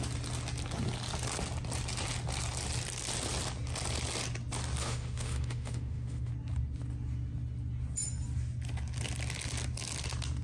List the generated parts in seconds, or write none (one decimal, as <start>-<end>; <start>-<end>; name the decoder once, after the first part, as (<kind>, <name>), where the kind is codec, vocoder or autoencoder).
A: 4.8-6.3 (autoencoder, DAC-VAE)